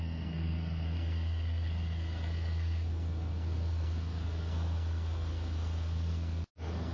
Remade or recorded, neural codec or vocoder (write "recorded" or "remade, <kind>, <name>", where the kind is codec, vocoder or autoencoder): remade, codec, SNAC